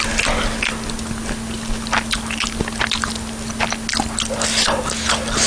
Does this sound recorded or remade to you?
recorded